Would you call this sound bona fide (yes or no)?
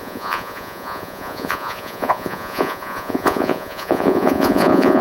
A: no